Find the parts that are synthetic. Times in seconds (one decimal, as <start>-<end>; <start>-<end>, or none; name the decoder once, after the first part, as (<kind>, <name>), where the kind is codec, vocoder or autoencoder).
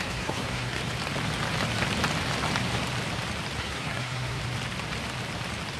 0.0-0.8 (codec, SNAC); 3.6-4.4